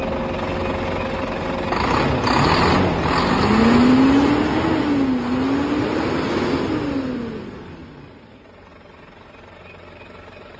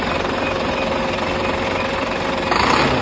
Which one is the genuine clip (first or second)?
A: first